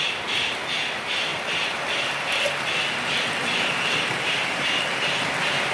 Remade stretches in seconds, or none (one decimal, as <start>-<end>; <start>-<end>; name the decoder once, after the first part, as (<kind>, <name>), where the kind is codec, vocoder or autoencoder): none